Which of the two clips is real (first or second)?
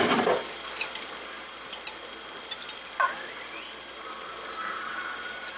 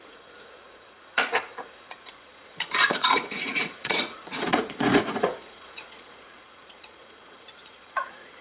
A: first